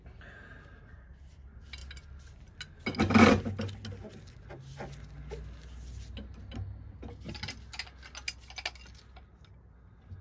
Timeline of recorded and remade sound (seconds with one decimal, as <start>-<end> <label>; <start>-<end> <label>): 0.0-10.2 recorded